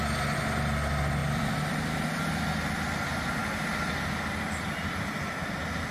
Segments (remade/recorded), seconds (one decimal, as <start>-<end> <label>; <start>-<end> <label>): 0.0-1.2 recorded; 1.2-2.1 remade; 2.1-5.9 recorded